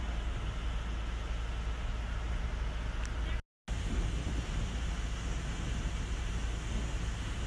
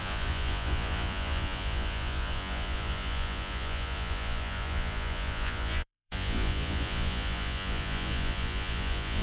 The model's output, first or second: second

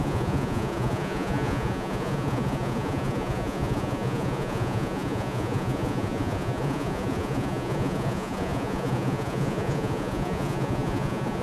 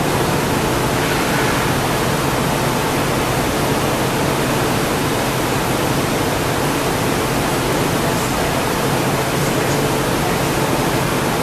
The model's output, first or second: first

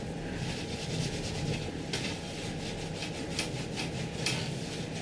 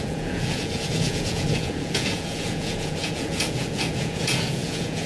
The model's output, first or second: second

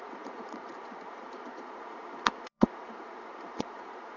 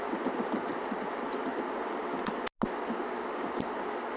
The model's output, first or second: first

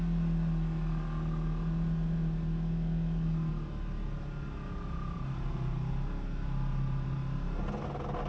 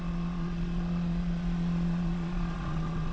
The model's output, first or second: second